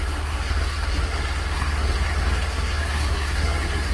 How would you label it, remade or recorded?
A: remade